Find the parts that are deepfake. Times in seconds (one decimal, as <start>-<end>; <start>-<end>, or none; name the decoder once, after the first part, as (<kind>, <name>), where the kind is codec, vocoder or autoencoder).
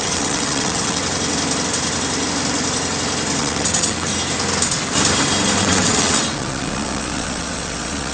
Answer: 0.0-1.0 (vocoder, WaveNeXt); 3.4-4.1; 5.6-8.1